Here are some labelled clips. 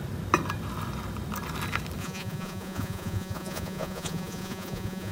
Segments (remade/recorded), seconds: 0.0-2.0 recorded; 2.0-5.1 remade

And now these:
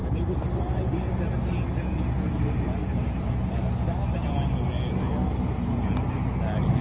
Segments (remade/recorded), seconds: 0.0-1.1 remade; 1.1-2.8 recorded; 2.8-3.7 remade; 3.7-6.8 recorded

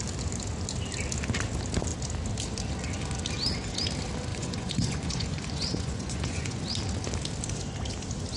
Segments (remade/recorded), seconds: 0.0-4.3 recorded; 4.3-6.6 remade; 6.6-8.4 recorded